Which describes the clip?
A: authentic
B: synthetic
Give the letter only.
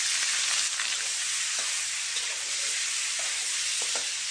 A